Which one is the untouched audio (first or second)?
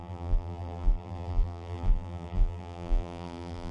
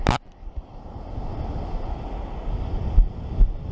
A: second